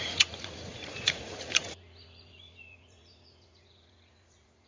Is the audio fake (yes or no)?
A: yes